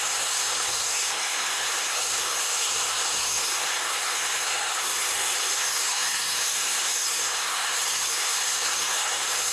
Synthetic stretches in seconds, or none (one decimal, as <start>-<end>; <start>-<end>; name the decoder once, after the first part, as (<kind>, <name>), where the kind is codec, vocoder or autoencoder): 0.0-9.5 (codec, SNAC)